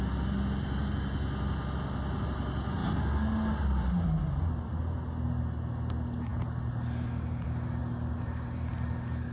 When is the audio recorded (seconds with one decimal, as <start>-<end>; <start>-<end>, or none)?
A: 0.0-9.3